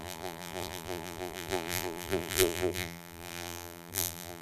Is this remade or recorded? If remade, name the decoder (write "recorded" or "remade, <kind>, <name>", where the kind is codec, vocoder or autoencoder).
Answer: remade, vocoder, BigVGAN v2